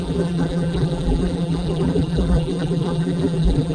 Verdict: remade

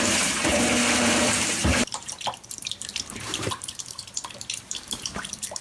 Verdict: remade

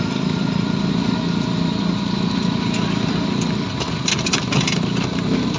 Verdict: remade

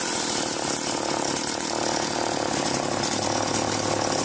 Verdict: recorded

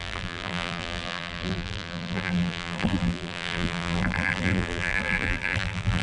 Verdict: remade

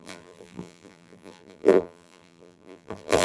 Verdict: remade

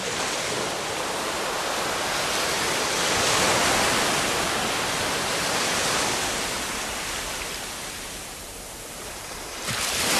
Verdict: remade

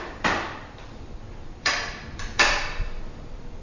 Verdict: remade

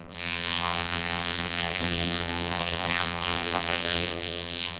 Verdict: remade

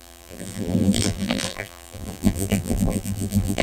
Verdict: remade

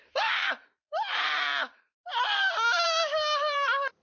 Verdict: remade